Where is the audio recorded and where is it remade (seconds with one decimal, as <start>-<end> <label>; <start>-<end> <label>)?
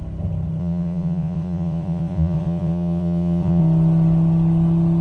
0.0-0.6 recorded; 0.6-3.6 remade; 3.6-5.0 recorded